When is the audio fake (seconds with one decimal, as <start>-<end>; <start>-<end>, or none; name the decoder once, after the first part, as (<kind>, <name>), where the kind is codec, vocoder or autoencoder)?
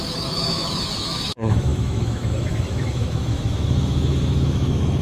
0.0-5.0 (autoencoder, DAC-VAE)